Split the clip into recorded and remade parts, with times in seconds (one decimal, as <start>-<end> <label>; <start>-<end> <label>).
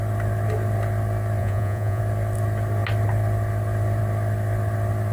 0.0-1.4 recorded; 1.4-2.0 remade; 2.0-5.1 recorded